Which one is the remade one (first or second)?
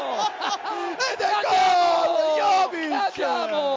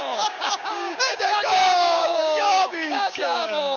second